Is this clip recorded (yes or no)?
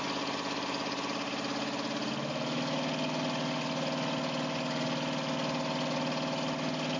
yes